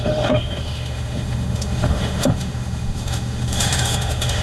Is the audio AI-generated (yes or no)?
yes